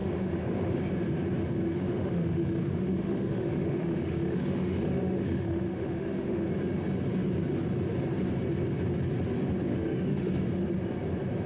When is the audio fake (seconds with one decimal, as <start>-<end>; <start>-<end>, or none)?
0.0-0.8; 1.7-6.4; 9.7-10.5